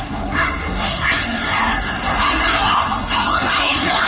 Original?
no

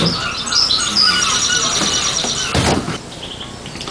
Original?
yes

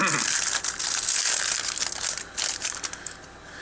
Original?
yes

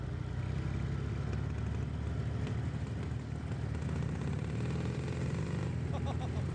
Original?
yes